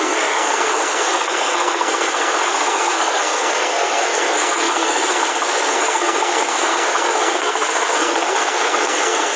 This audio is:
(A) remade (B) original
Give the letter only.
A